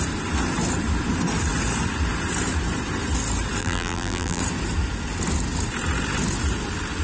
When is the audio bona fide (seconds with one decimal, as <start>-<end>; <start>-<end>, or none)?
0.0-3.6; 4.4-7.0